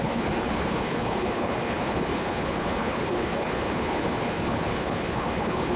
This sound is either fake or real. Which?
fake